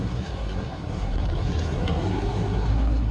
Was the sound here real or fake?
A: fake